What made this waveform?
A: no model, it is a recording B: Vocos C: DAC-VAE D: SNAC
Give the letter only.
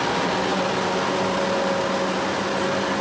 A